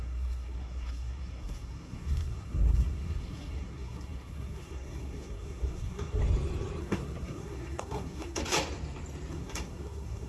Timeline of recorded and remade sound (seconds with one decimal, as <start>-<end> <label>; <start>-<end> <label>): 0.0-6.2 remade; 6.2-6.8 recorded; 6.8-8.4 remade; 8.4-9.3 recorded; 9.3-10.3 remade